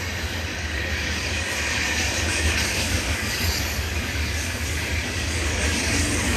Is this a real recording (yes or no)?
no